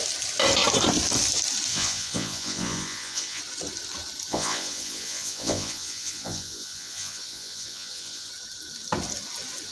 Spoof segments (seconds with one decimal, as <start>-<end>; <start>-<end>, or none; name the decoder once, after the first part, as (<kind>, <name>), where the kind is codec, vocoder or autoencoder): 1.7-3.4 (vocoder, Vocos); 4.3-8.3